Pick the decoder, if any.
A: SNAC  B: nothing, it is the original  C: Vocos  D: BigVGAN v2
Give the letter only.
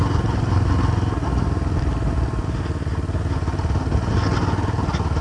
B